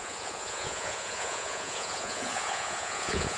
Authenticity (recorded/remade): remade